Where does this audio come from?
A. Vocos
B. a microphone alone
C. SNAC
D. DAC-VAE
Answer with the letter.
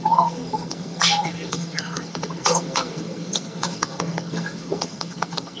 C